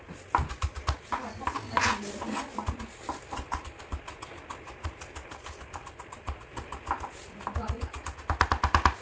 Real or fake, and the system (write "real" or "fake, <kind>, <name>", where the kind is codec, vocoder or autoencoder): real